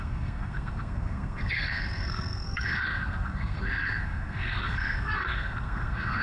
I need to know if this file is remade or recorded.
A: remade